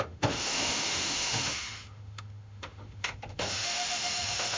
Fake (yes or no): yes